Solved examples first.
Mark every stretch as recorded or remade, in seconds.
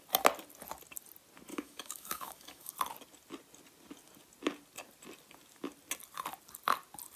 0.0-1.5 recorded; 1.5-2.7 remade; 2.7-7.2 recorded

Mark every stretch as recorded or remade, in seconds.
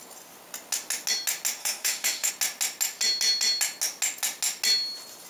0.0-1.6 recorded; 1.6-2.3 remade; 2.3-5.3 recorded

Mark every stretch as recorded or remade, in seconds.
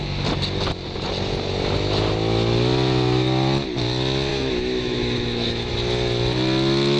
0.0-4.3 recorded; 4.3-5.7 remade; 5.7-7.0 recorded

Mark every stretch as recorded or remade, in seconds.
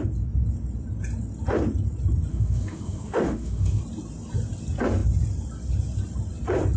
0.0-2.3 recorded; 2.3-3.8 remade; 3.8-6.8 recorded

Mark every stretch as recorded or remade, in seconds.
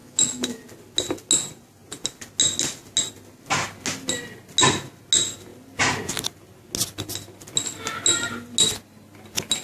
0.0-0.6 remade; 0.6-9.6 recorded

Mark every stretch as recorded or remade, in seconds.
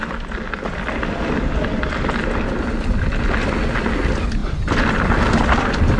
0.0-6.0 recorded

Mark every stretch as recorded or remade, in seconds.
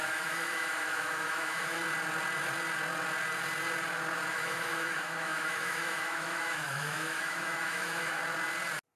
0.0-1.8 remade; 1.8-4.3 recorded; 4.3-8.2 remade; 8.2-9.0 recorded